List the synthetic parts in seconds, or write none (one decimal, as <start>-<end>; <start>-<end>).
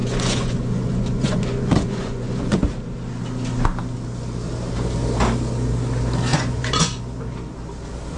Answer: 0.0-2.6; 6.3-7.0